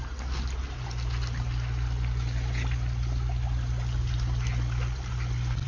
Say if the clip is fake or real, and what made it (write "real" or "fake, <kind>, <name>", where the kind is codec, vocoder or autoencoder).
real